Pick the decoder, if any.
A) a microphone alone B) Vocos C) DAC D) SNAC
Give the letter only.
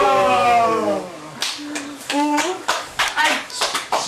C